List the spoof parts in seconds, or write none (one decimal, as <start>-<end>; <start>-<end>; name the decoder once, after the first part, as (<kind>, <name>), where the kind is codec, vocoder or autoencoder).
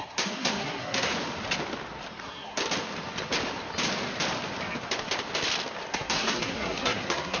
0.0-1.1 (codec, SNAC); 2.2-2.6; 5.9-7.4